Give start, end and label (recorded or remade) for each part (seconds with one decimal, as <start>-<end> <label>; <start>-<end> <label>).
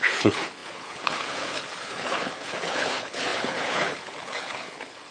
0.0-5.1 remade